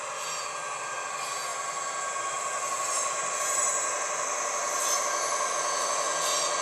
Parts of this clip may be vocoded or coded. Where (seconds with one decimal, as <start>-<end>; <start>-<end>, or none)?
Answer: 1.5-5.5